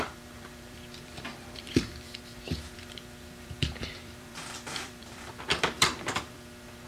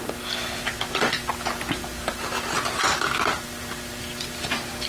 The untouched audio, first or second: second